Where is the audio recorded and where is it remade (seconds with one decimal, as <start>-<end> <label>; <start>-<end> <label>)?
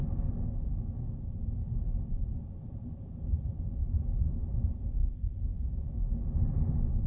0.0-0.7 recorded; 0.7-4.4 remade; 4.4-7.1 recorded